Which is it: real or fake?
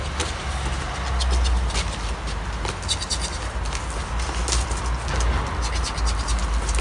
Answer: real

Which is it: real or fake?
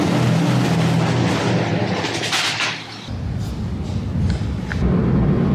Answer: real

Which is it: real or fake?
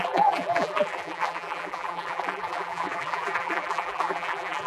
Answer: fake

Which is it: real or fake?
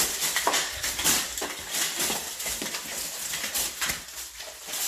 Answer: fake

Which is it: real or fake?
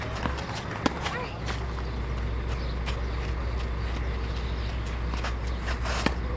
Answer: real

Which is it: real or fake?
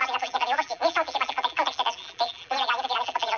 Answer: fake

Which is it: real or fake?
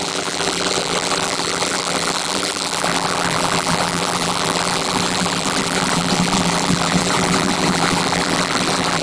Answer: fake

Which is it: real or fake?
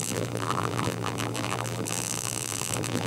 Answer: fake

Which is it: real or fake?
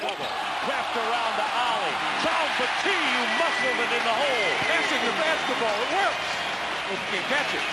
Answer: real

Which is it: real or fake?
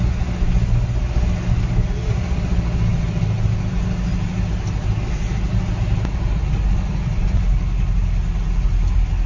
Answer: real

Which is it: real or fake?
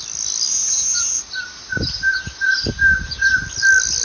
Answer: real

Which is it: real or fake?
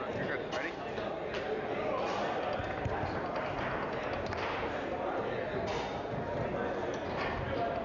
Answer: real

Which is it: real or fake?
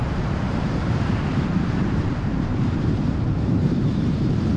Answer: fake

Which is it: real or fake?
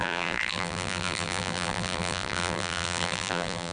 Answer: fake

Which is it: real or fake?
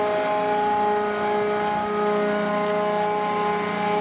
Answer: real